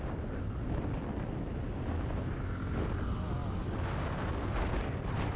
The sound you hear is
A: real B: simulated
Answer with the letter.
A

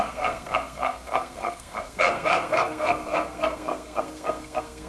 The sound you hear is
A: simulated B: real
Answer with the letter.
A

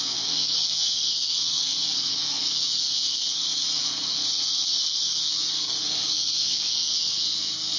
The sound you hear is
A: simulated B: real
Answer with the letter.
A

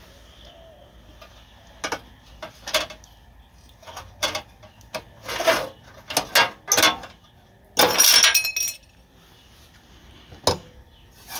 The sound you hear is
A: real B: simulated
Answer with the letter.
A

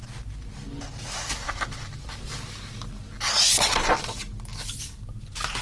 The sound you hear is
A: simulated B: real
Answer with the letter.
B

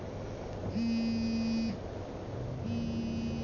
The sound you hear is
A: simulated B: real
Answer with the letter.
B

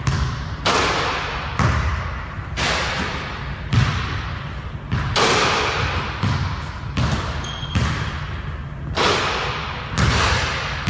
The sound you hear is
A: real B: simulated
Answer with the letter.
A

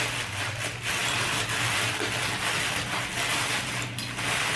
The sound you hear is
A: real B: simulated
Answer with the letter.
A